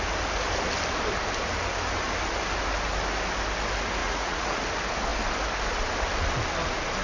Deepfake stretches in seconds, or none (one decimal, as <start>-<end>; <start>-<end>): 4.0-4.6